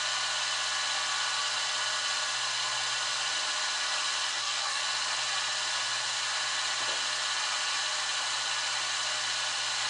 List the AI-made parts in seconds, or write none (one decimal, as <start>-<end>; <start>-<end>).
4.3-4.8